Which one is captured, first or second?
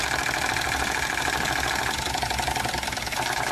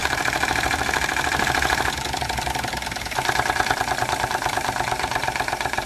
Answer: first